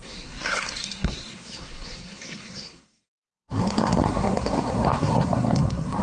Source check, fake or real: fake